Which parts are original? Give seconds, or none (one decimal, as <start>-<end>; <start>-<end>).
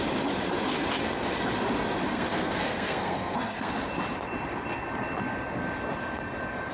0.0-2.1; 3.7-6.7